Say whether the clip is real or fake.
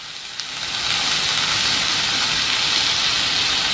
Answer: real